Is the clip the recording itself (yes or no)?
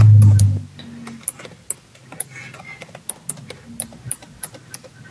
yes